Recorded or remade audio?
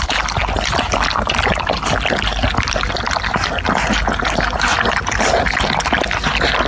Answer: recorded